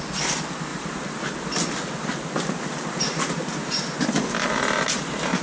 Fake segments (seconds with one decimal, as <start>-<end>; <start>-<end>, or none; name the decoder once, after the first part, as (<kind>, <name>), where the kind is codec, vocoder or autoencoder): none